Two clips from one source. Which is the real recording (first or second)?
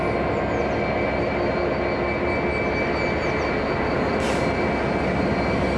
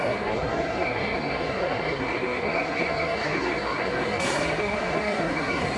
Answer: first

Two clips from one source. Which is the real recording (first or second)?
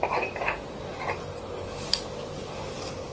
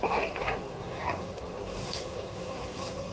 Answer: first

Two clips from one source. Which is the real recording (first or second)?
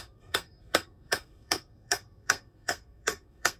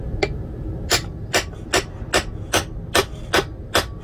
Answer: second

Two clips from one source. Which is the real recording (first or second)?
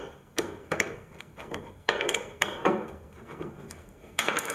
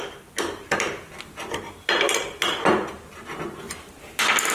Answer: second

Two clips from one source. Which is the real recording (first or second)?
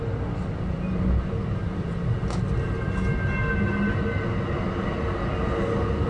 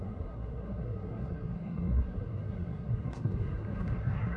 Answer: first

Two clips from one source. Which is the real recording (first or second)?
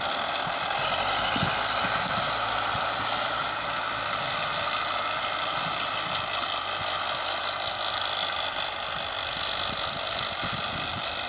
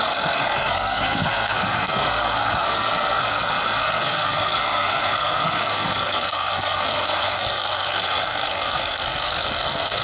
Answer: first